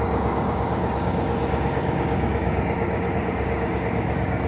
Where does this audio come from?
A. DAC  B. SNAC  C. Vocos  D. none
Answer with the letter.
A